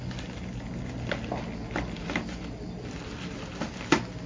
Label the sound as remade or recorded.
recorded